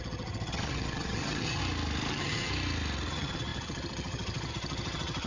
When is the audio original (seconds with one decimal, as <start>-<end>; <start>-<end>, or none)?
1.6-2.1; 2.5-3.1